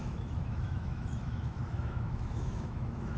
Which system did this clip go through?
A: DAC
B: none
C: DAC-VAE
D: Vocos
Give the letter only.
C